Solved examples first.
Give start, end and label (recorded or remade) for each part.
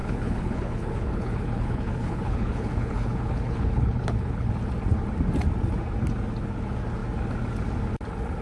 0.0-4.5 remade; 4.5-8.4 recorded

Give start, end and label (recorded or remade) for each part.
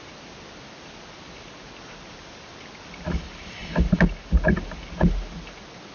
0.0-5.9 recorded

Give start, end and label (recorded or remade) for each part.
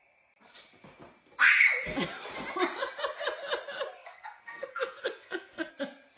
0.0-4.0 recorded; 4.0-5.7 remade; 5.7-6.2 recorded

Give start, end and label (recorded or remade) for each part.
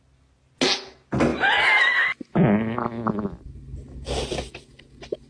0.0-5.3 recorded